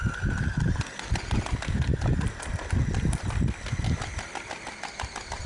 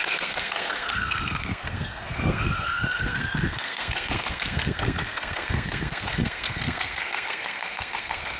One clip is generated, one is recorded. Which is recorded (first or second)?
first